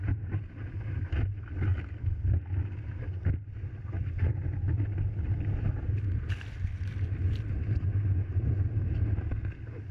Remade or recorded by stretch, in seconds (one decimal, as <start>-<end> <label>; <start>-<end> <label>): 0.0-9.9 recorded